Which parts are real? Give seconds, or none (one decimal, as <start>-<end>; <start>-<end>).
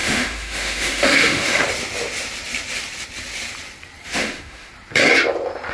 1.6-4.1; 4.7-5.7